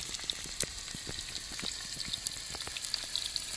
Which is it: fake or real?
real